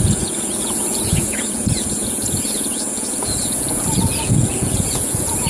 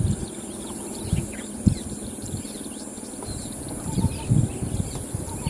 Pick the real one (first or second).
second